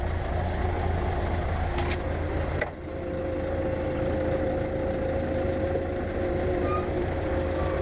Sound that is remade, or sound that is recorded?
recorded